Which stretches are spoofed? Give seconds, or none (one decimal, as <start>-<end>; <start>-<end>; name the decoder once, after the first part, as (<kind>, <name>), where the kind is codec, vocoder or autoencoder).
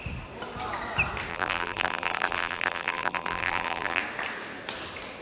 1.3-4.0 (vocoder, BigVGAN v2)